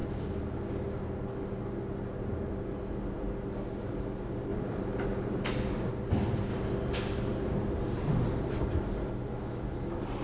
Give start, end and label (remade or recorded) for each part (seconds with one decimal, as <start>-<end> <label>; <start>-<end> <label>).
0.0-4.5 recorded; 4.5-5.9 remade; 5.9-6.5 recorded; 6.5-9.1 remade; 9.1-10.2 recorded